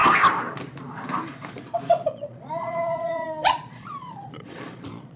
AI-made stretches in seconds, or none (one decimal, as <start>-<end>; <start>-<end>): 2.1-5.2

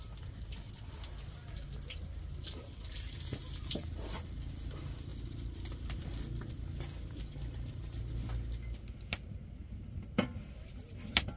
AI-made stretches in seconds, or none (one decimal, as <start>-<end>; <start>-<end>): none